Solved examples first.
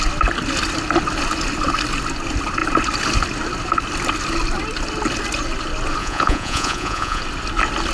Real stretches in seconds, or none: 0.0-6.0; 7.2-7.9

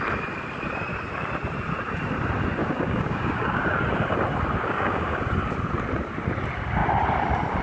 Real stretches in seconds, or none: 0.0-2.6; 3.8-4.6; 5.2-7.6

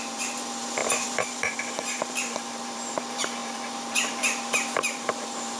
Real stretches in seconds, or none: none

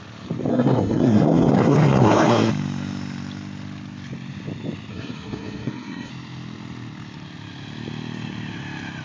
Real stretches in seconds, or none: 0.0-0.5; 2.5-4.9; 6.1-9.0

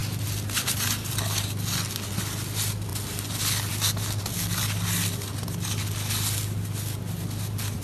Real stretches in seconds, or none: 0.0-7.8

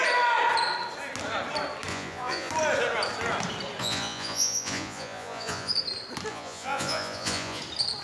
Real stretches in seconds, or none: 0.0-1.9; 2.5-3.8; 5.7-6.3; 7.6-8.0

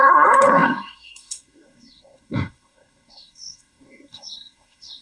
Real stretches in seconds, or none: none